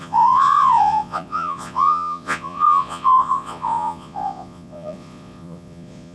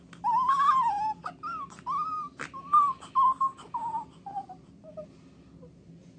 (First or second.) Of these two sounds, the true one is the second